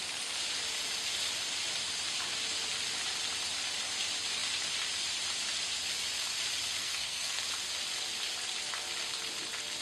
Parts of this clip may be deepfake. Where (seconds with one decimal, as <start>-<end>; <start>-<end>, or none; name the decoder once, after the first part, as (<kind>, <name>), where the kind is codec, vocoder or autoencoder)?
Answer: 6.8-7.4 (codec, SNAC)